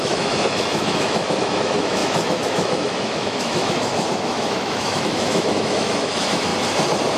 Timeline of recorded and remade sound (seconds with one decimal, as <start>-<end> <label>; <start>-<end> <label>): 0.0-6.5 remade; 6.5-7.2 recorded

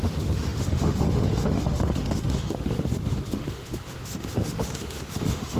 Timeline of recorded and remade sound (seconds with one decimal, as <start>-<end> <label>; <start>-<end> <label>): 0.0-5.6 remade

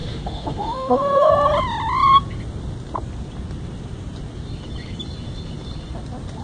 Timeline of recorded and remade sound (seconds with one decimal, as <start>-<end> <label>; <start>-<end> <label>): 0.0-1.3 remade; 1.3-6.4 recorded